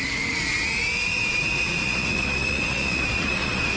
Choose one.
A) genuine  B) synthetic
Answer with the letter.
B